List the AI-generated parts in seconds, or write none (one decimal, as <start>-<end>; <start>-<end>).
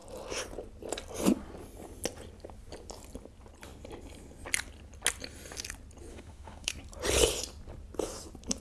6.1-6.7